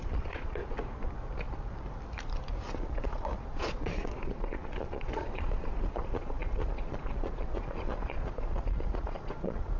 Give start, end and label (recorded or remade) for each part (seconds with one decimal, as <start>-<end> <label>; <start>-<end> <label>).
0.0-0.6 remade; 0.6-2.8 recorded; 2.8-9.8 remade

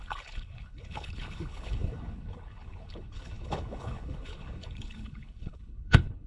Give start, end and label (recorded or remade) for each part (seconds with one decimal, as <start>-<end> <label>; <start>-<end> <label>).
0.0-6.3 remade

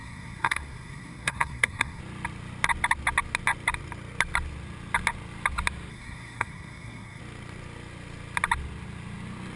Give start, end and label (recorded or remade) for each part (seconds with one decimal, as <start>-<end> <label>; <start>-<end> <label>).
0.0-2.0 remade; 2.0-5.9 recorded; 5.9-7.2 remade; 7.2-9.6 recorded

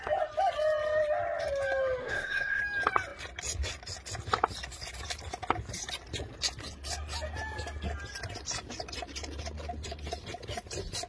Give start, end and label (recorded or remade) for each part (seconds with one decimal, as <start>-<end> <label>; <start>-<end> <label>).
0.0-2.0 recorded; 2.0-2.6 remade; 2.6-11.1 recorded